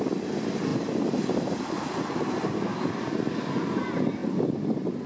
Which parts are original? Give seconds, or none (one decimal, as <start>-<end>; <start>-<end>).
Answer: 0.0-5.1